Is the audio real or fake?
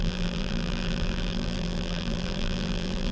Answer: fake